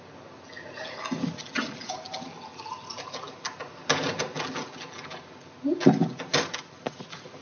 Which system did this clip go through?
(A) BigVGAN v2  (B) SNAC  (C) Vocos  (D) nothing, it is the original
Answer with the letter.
D